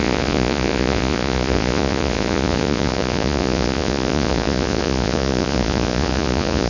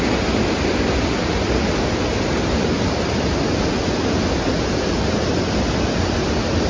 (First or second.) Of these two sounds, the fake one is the first